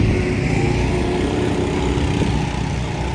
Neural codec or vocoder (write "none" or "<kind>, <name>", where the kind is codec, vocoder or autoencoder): none